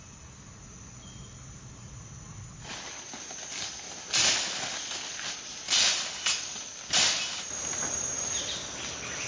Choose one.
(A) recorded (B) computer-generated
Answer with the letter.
A